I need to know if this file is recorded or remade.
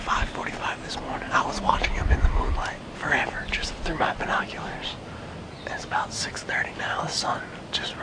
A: recorded